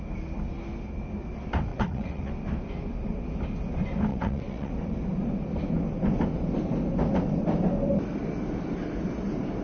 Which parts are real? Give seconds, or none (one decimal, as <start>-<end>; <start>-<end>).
0.0-1.7; 2.3-4.1; 4.7-9.6

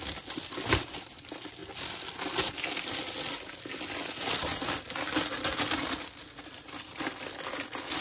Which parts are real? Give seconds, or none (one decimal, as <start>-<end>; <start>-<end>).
0.0-8.0

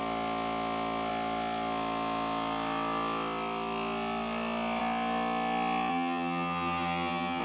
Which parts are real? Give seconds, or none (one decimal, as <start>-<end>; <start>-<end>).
0.0-5.9

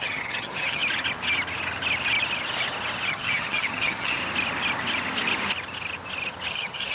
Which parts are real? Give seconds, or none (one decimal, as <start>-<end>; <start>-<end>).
0.8-3.1; 4.2-6.5

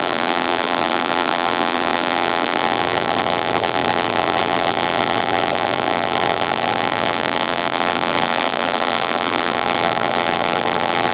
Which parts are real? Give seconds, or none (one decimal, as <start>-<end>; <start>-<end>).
none

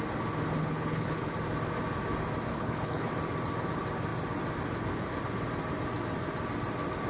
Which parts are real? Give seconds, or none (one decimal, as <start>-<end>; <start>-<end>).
0.0-0.6; 1.3-2.5; 3.1-7.1

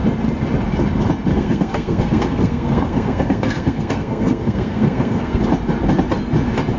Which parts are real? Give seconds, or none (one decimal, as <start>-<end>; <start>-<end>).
0.0-1.3; 5.4-6.8